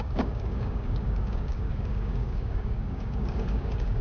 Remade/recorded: remade